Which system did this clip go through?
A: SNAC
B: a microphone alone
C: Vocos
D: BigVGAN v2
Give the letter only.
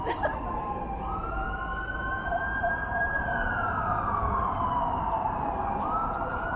B